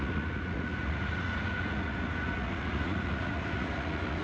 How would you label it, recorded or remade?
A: remade